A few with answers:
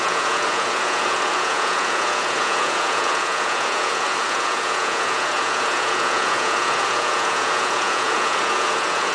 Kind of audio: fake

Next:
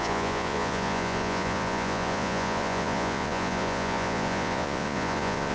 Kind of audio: fake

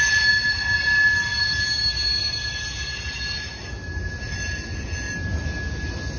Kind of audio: real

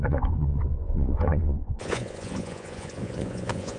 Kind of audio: fake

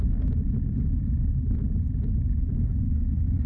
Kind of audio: real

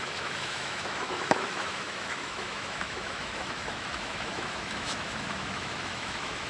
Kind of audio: fake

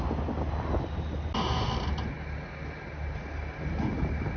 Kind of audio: real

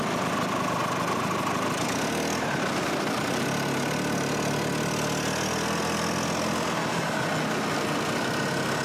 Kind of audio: real